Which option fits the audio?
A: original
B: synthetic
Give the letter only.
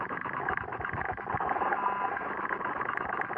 A